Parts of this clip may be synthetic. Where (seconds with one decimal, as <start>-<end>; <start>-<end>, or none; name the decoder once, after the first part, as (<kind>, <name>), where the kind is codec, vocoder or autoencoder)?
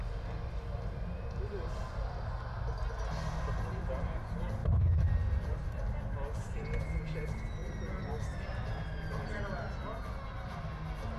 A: 4.6-5.1 (autoencoder, DAC-VAE)